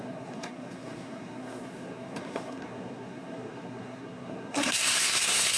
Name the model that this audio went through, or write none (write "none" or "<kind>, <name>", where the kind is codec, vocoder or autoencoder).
codec, SNAC